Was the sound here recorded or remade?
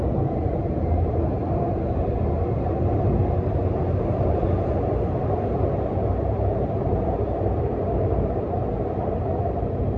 remade